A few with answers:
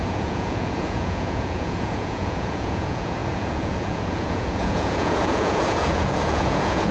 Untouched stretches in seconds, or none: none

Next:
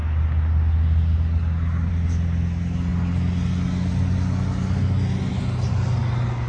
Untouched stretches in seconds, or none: 0.0-6.5

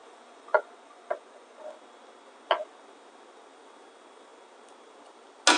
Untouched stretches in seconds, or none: 1.6-5.6